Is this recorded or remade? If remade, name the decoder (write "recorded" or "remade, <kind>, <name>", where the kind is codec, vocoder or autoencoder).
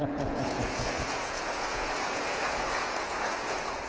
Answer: remade, vocoder, Vocos